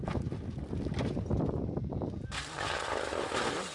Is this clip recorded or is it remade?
recorded